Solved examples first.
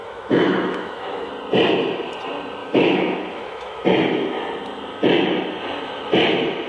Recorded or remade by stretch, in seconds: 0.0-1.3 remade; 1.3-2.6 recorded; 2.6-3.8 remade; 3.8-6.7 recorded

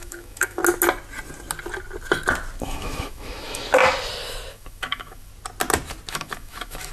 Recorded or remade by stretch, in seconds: 0.0-0.6 remade; 0.6-2.6 recorded; 2.6-3.8 remade; 3.8-4.5 recorded; 4.5-5.3 remade; 5.3-6.1 recorded; 6.1-6.9 remade

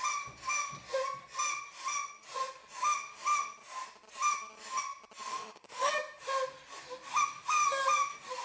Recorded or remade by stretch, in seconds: 0.0-5.3 recorded; 5.3-5.9 remade; 5.9-8.4 recorded

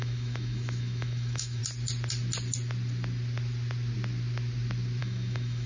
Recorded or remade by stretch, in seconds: 0.0-1.6 remade; 1.6-5.0 recorded; 5.0-5.7 remade

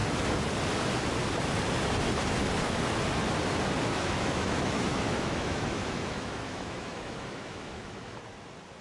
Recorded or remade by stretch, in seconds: 0.0-3.9 recorded; 3.9-8.2 remade; 8.2-8.8 recorded

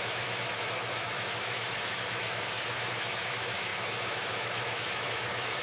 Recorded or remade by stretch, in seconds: 0.0-5.6 remade

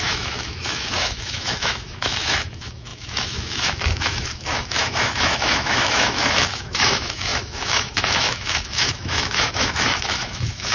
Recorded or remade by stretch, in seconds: 0.0-10.7 remade